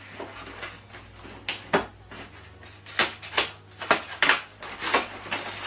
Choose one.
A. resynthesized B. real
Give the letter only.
B